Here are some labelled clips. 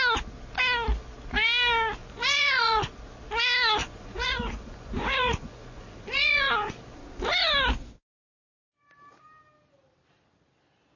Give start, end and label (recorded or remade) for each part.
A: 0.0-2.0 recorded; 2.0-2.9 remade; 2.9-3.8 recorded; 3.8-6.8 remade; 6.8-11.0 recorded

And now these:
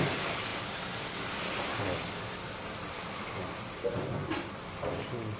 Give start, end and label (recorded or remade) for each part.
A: 0.0-5.4 recorded

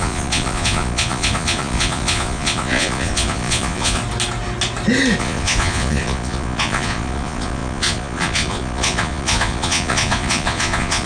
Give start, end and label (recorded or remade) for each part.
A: 0.0-4.0 remade; 4.0-5.2 recorded; 5.2-11.1 remade